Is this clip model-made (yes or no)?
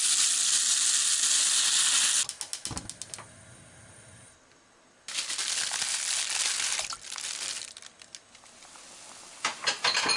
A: no